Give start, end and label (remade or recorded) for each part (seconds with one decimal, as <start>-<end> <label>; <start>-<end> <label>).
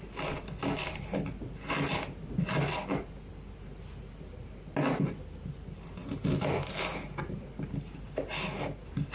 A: 0.0-9.1 recorded